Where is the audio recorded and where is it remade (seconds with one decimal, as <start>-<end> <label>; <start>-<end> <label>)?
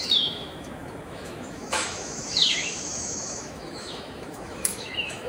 0.0-5.3 remade